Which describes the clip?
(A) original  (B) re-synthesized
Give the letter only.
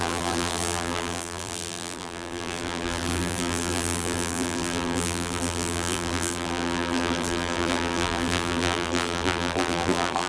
B